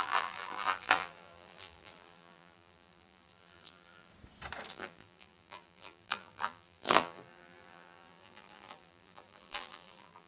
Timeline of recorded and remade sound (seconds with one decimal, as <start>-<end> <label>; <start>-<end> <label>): 0.0-4.1 remade; 4.1-4.7 recorded; 4.7-10.3 remade